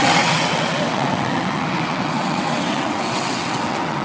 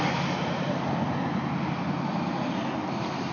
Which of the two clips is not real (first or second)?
first